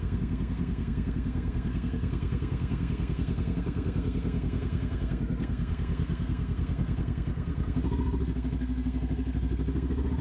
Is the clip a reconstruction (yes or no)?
yes